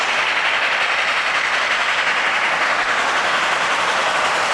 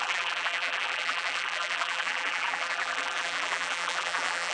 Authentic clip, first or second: first